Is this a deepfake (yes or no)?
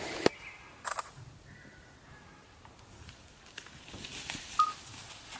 no